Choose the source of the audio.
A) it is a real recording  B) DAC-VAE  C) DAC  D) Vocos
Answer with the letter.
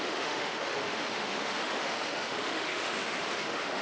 B